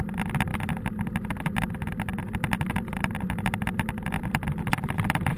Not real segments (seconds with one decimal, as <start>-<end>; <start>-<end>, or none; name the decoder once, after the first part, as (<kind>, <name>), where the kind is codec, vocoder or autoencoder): 0.0-0.5 (vocoder, BigVGAN v2); 1.7-2.1; 4.2-5.4